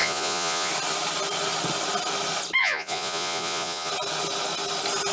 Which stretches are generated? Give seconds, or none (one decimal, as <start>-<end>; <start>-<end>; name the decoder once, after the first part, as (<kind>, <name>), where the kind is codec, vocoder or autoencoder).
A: 0.0-0.7 (vocoder, Vocos); 2.6-3.9